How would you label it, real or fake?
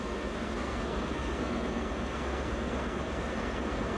fake